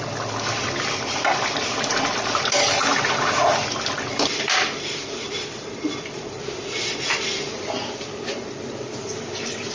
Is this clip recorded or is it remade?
remade